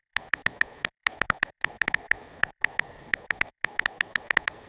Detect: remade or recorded remade